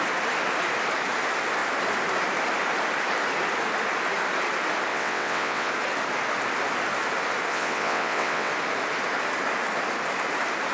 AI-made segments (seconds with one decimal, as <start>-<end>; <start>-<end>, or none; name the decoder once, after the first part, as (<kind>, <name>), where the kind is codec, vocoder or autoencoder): 4.9-5.7 (vocoder, WaveNeXt); 7.5-8.5